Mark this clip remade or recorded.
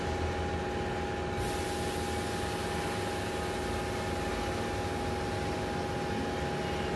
recorded